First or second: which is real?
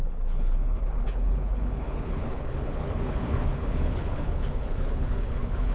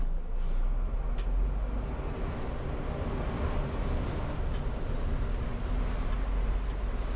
second